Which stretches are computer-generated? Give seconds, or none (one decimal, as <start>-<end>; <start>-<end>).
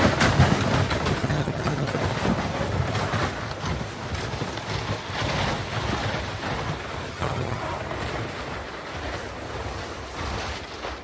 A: 1.2-2.0; 7.1-7.6